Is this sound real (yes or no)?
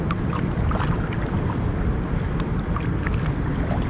no